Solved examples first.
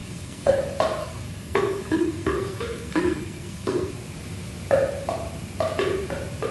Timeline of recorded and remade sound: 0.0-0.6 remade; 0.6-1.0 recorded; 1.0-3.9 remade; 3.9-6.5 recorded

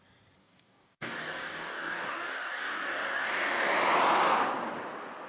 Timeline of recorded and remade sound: 0.0-0.4 recorded; 0.4-3.6 remade; 3.6-5.3 recorded

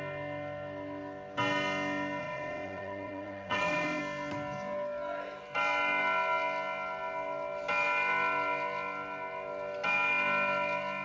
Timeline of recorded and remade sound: 0.0-2.2 recorded; 2.2-4.0 remade; 4.0-11.0 recorded

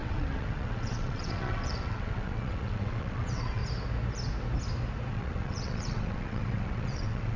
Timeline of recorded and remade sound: 0.0-3.6 remade; 3.6-5.1 recorded; 5.1-7.4 remade